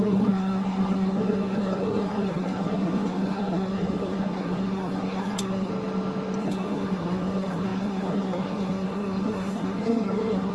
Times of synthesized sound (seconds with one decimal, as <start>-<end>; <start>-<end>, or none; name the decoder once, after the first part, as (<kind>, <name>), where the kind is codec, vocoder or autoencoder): 0.0-5.7 (codec, SNAC); 6.4-10.5

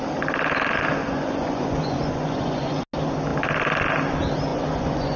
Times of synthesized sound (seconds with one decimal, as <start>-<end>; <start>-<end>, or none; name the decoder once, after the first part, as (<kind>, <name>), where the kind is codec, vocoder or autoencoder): 1.0-2.8 (vocoder, Vocos); 4.5-5.2

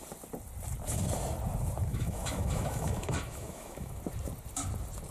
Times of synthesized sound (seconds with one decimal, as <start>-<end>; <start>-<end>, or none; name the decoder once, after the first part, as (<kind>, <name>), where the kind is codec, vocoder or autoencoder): 1.9-4.0 (autoencoder, DAC-VAE)

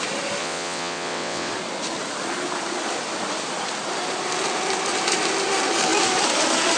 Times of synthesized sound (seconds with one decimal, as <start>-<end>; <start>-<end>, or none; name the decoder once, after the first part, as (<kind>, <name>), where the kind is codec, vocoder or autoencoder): 0.4-1.5 (vocoder, WaveNeXt)

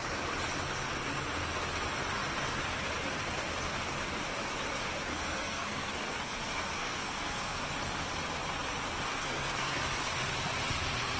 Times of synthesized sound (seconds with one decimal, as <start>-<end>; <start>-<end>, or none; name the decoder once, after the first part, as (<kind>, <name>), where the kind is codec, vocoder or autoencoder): 5.1-7.6 (codec, SNAC); 9.1-9.8

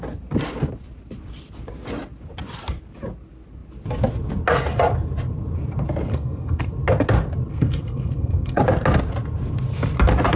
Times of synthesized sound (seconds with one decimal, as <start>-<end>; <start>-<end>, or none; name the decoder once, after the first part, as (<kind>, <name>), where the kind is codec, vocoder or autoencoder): 6.1-6.7 (codec, SNAC); 7.5-8.6